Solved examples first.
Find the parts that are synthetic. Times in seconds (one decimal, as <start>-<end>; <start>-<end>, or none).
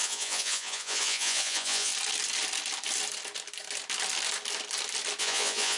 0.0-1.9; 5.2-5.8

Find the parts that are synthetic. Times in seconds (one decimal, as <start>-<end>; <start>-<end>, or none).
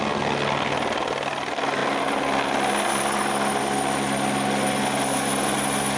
none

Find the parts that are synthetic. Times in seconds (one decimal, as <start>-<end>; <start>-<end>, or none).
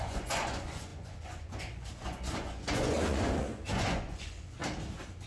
0.0-4.6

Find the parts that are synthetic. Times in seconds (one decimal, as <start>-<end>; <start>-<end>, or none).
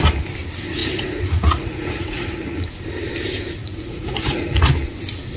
0.8-2.4; 3.6-4.7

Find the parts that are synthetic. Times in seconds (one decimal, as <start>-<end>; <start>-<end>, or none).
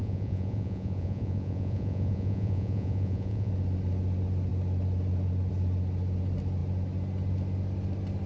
0.0-3.5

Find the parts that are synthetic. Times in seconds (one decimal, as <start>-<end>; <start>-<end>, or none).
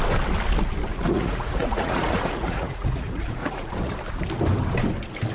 0.9-3.9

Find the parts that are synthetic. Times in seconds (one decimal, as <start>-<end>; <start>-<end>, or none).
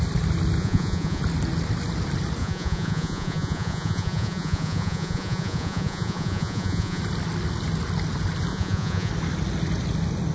0.6-1.2; 2.4-7.0; 8.5-9.1